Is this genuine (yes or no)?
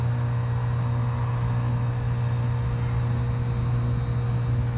yes